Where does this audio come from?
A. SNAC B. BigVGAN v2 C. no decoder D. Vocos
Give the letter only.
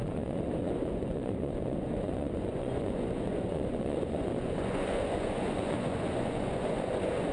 D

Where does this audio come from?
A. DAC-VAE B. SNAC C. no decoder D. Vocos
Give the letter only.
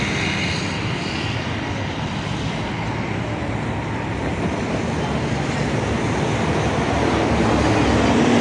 C